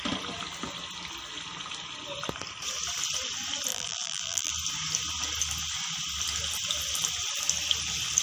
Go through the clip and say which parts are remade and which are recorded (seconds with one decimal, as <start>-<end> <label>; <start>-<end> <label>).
0.0-3.7 recorded; 3.7-4.5 remade; 4.5-8.2 recorded